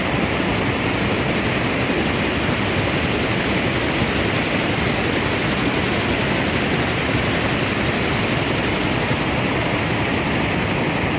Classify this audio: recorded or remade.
recorded